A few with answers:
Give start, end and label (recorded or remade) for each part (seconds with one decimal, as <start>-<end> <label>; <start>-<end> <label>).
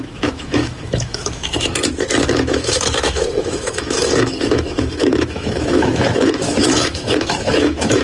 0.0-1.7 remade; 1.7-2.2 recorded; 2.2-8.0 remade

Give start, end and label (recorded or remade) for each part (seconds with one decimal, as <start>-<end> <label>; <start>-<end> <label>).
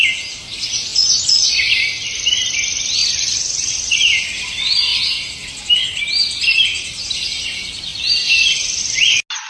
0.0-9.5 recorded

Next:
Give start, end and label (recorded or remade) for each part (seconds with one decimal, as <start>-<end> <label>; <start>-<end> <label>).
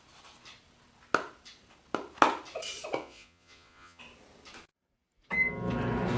0.0-3.0 recorded; 3.0-4.0 remade; 4.0-6.2 recorded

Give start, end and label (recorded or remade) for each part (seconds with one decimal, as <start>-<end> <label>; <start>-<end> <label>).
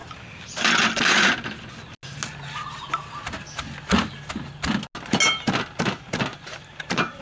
0.0-6.3 recorded; 6.3-7.2 remade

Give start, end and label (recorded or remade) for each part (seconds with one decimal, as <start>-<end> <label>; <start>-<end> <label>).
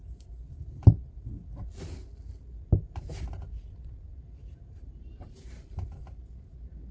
0.0-4.1 recorded; 4.1-6.0 remade; 6.0-6.9 recorded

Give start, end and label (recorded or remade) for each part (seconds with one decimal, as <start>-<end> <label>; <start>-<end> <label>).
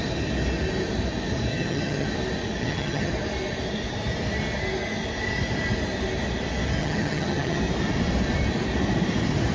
0.0-1.5 recorded; 1.5-2.1 remade; 2.1-2.6 recorded; 2.6-3.1 remade; 3.1-6.8 recorded; 6.8-7.6 remade; 7.6-9.5 recorded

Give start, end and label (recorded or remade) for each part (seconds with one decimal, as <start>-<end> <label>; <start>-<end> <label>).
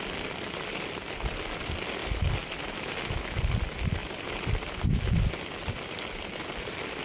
0.0-4.0 recorded; 4.0-5.4 remade; 5.4-7.0 recorded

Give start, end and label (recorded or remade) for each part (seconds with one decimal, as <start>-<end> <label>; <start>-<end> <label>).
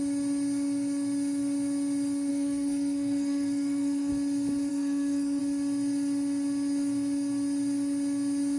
0.0-2.3 recorded; 2.3-4.1 remade; 4.1-4.7 recorded; 4.7-5.4 remade; 5.4-8.6 recorded